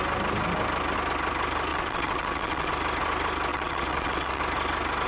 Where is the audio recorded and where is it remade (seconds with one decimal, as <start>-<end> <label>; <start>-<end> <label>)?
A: 0.0-1.7 recorded; 1.7-2.7 remade; 2.7-3.5 recorded; 3.5-4.4 remade; 4.4-5.1 recorded